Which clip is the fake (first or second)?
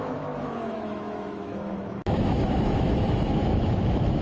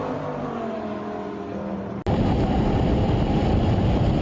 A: first